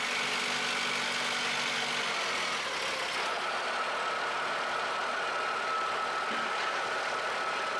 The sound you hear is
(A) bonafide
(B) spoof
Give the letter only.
A